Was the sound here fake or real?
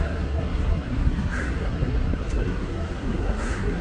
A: fake